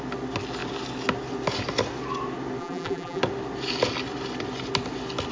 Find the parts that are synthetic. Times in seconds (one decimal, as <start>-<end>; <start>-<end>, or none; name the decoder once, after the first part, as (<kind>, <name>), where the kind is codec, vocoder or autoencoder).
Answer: 2.6-3.2 (vocoder, BigVGAN v2)